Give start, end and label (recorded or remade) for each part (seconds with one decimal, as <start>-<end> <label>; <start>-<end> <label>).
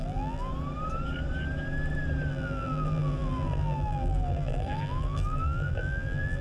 0.0-0.5 remade; 0.5-2.3 recorded; 2.3-6.4 remade